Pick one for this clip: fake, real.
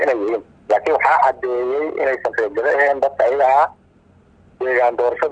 real